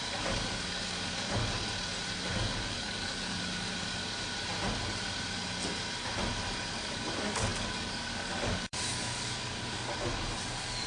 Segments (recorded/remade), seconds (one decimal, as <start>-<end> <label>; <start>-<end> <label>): 0.0-1.4 remade; 1.4-2.3 recorded; 2.3-4.0 remade; 4.0-6.7 recorded; 6.7-10.9 remade